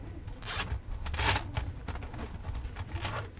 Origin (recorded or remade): recorded